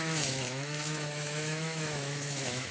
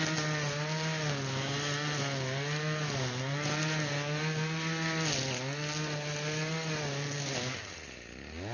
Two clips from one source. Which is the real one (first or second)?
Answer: second